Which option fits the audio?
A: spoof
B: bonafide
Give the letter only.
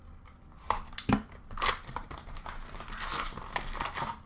B